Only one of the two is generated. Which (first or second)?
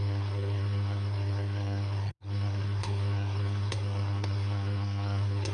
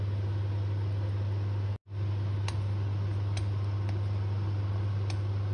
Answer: first